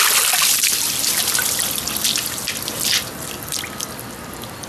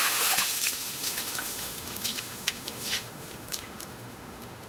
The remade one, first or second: second